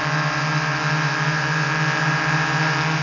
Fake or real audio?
real